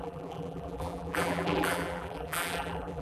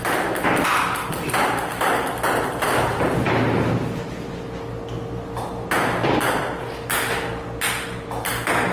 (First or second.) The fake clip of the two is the first